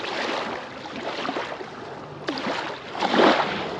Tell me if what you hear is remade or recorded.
recorded